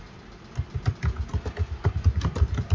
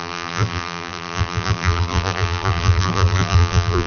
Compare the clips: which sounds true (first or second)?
first